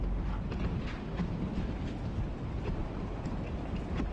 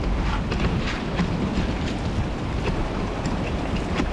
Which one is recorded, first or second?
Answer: first